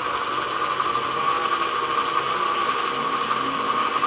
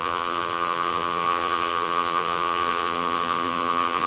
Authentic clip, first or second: first